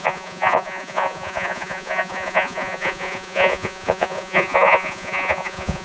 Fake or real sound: fake